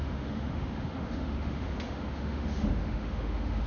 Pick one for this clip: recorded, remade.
remade